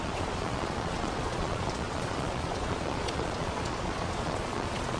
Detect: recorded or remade remade